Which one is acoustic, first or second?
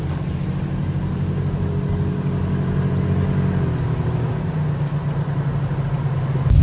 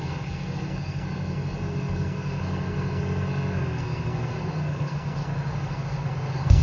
first